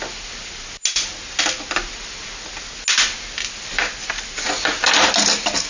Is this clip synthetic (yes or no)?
no